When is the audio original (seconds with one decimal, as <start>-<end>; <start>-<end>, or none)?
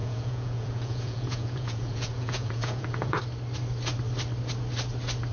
3.2-5.3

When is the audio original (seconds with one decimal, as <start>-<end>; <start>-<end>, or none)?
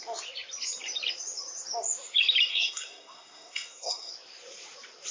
0.0-2.5; 4.1-5.1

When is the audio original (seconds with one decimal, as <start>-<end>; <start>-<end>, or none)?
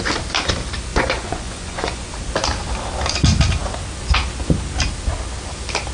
0.0-0.9; 2.1-5.9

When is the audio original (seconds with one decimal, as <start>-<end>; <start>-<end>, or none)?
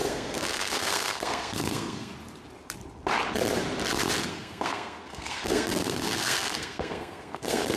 2.1-4.3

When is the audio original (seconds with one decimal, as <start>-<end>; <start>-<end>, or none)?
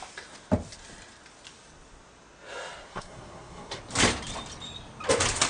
0.0-2.9; 3.8-5.5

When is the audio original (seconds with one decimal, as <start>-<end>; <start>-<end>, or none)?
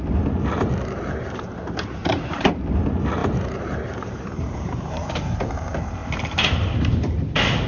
0.0-2.0; 2.6-3.2; 5.2-6.0; 7.1-7.7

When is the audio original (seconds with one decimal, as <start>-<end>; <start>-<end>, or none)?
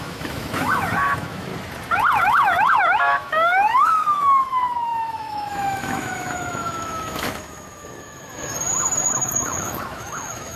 1.5-2.2; 8.5-9.1